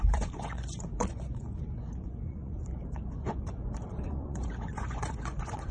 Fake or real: fake